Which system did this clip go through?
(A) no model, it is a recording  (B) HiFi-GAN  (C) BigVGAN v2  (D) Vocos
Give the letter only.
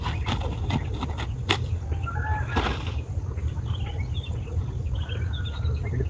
A